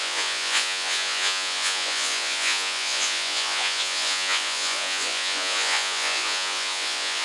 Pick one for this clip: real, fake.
fake